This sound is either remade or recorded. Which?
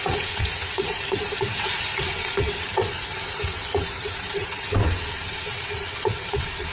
remade